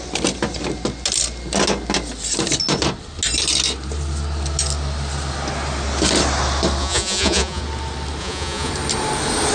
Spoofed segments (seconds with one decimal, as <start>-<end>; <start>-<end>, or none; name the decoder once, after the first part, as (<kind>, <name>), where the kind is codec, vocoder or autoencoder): 6.8-7.6 (vocoder, Vocos); 8.2-8.7